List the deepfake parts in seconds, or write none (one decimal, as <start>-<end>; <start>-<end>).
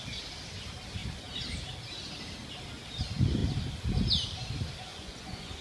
4.9-5.6